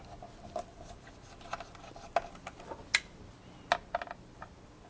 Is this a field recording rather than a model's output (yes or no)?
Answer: yes